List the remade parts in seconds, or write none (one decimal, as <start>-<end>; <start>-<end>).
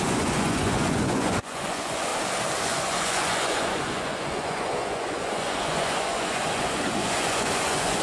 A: 0.0-2.1; 2.6-8.0